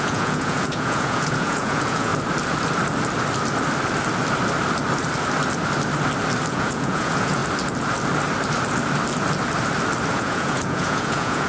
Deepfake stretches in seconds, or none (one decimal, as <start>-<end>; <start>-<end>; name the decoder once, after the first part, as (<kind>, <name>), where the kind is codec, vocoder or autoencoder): 0.0-2.1 (vocoder, Vocos); 6.5-7.4; 10.1-11.5